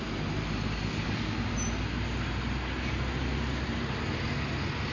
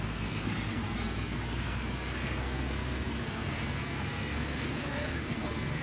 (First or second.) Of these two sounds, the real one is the first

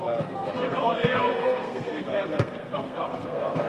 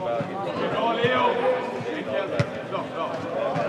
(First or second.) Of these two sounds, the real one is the second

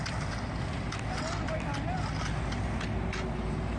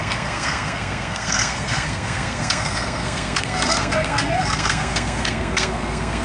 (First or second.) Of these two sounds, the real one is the first